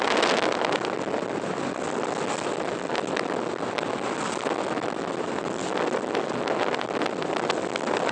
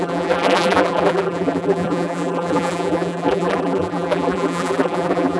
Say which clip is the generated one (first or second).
second